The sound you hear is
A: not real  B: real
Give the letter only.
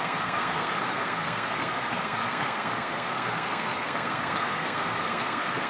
A